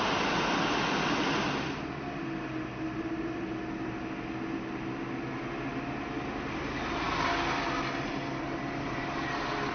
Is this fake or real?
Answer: real